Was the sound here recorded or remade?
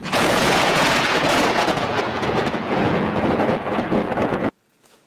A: remade